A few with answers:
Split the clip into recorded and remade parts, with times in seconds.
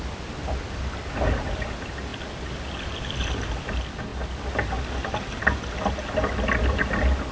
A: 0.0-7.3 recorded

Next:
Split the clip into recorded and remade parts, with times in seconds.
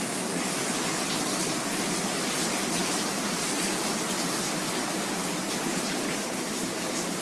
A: 0.0-2.8 recorded; 2.8-3.5 remade; 3.5-5.7 recorded; 5.7-6.6 remade; 6.6-7.2 recorded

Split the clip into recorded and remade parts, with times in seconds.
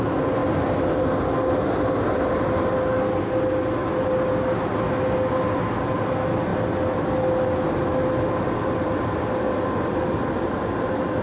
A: 0.0-11.2 recorded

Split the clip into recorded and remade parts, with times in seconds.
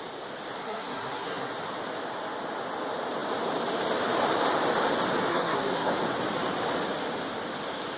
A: 0.0-0.6 recorded; 0.6-1.5 remade; 1.5-5.3 recorded; 5.3-5.9 remade; 5.9-8.0 recorded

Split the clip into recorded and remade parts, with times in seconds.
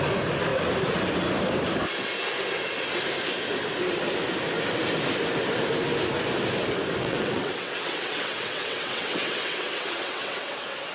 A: 0.0-7.0 recorded; 7.0-10.9 remade